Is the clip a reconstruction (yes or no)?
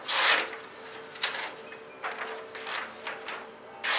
no